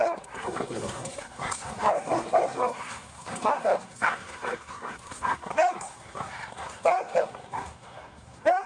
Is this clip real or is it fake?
fake